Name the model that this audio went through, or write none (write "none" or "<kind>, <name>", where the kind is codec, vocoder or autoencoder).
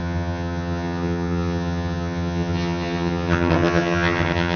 vocoder, HiFi-GAN